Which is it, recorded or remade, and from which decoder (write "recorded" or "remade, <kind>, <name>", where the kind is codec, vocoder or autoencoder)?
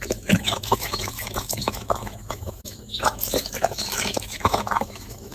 remade, autoencoder, DAC-VAE